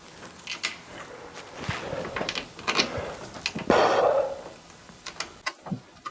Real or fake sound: real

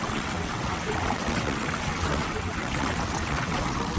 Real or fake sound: fake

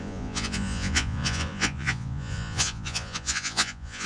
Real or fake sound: fake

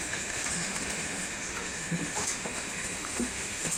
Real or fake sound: fake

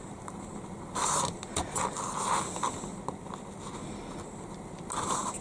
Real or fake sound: real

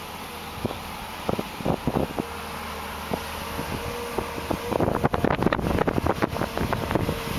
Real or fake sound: real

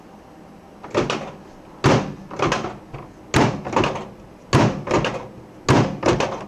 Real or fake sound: real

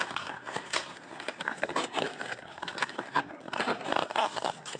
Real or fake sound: fake